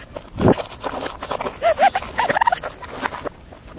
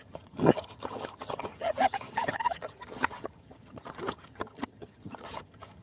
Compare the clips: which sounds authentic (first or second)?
first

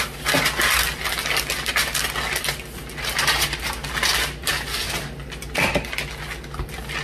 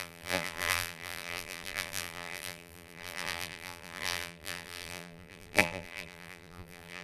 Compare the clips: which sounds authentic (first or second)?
first